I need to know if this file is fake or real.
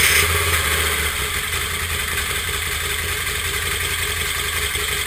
real